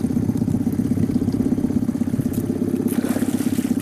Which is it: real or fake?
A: real